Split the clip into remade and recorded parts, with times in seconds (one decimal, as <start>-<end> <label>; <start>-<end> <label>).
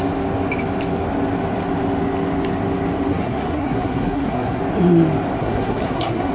0.0-3.1 recorded; 3.1-4.6 remade; 4.6-5.4 recorded; 5.4-6.3 remade